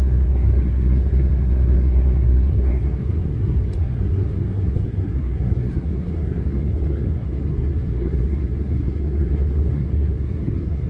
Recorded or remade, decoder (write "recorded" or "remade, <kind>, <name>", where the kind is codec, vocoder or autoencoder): remade, codec, SNAC